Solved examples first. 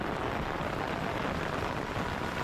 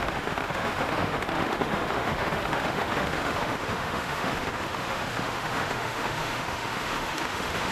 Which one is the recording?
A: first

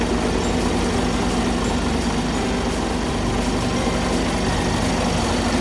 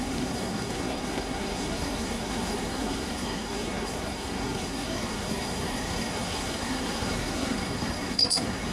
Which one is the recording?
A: first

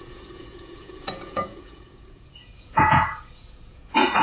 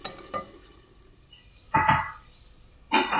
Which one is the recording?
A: second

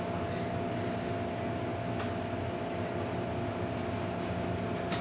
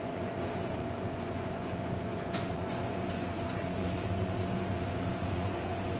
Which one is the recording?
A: first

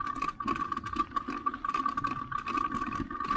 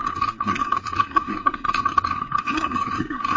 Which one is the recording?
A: first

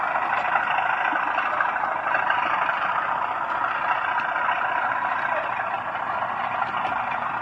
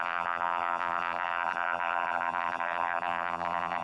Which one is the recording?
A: first